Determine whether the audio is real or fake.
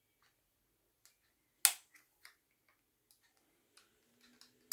real